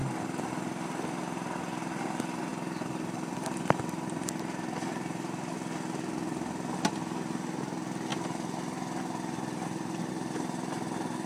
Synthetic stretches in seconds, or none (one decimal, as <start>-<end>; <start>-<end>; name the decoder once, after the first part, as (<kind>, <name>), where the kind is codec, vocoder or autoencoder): 0.0-1.6 (vocoder, BigVGAN v2); 2.5-5.5